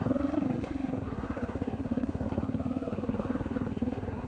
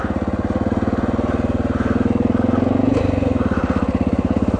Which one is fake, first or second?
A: first